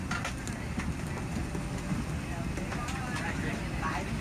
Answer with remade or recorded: recorded